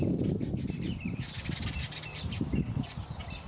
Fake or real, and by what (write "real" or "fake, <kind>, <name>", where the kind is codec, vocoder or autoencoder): fake, vocoder, BigVGAN v2